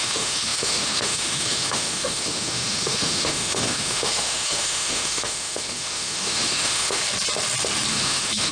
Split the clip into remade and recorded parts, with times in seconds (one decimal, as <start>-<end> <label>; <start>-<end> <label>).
0.0-7.0 remade; 7.0-7.9 recorded; 7.9-8.5 remade